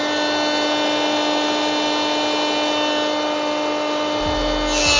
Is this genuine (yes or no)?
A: yes